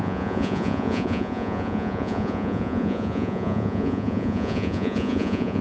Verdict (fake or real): fake